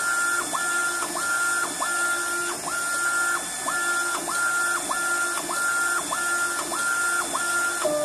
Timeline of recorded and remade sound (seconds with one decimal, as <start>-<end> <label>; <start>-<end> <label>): 0.0-8.0 recorded